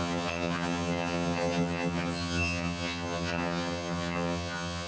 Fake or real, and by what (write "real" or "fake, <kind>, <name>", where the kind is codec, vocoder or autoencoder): fake, vocoder, HiFi-GAN